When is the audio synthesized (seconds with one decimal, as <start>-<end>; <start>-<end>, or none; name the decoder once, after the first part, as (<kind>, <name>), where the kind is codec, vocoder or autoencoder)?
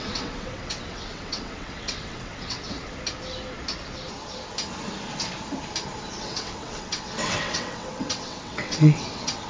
0.0-2.8 (vocoder, WaveNeXt); 6.2-9.5